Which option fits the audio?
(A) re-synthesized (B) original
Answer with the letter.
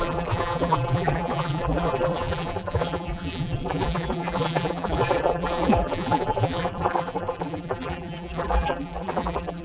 A